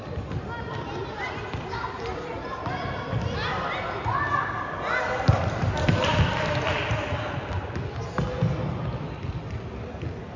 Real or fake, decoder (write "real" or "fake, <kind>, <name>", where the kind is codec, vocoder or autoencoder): real